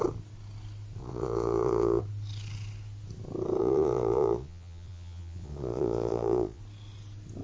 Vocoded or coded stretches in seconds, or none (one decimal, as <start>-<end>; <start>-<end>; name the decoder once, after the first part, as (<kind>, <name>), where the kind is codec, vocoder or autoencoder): 1.0-2.0 (vocoder, Vocos); 3.6-6.6